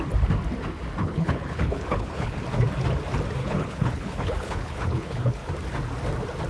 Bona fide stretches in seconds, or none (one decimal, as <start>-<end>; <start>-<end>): 0.0-1.0; 2.4-3.4; 5.5-6.5